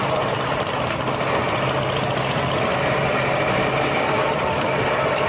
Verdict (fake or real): real